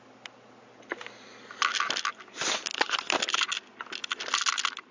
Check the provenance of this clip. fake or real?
real